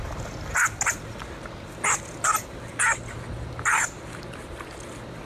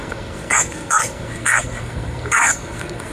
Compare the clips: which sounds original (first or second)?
first